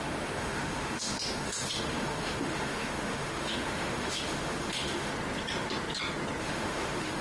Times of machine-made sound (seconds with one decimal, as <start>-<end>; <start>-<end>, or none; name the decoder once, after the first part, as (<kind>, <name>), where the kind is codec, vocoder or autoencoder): 0.0-5.1 (autoencoder, DAC-VAE); 6.4-7.2